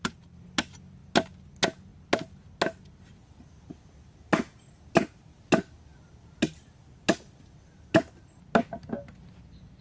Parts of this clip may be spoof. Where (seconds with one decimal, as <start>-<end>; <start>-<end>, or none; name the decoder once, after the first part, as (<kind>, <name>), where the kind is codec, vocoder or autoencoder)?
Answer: none